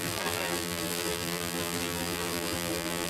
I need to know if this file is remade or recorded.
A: remade